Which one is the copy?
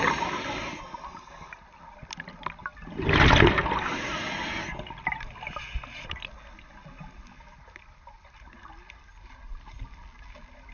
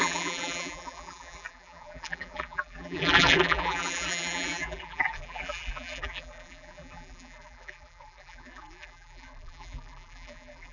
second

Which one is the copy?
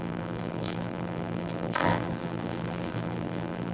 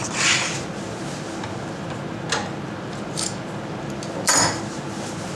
first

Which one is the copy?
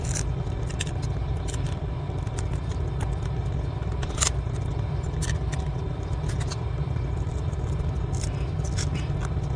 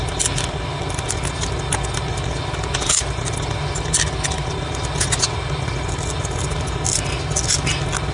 first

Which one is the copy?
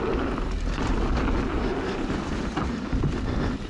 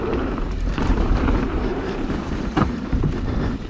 second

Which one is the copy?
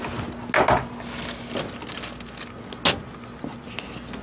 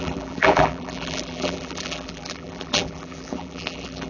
second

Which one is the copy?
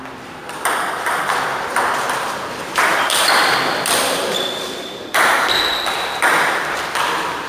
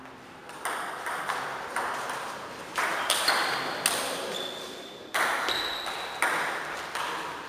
first